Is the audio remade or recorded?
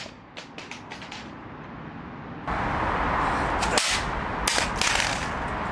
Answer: recorded